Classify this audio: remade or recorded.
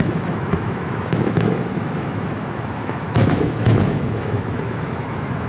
remade